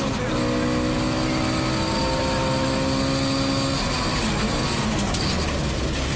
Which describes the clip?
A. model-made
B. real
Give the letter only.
B